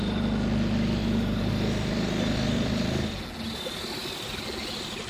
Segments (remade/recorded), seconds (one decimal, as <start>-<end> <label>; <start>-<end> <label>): 0.0-1.0 recorded; 1.0-1.5 remade; 1.5-5.1 recorded